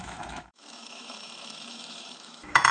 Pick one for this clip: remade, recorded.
remade